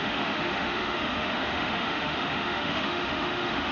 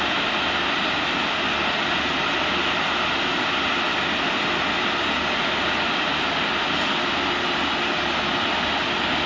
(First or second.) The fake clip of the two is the first